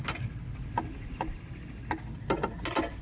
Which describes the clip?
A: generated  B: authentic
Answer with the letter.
B